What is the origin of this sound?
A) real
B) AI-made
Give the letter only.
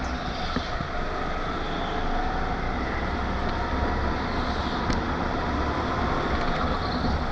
A